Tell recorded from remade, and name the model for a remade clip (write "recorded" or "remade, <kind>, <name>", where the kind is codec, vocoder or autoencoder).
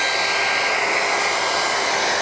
recorded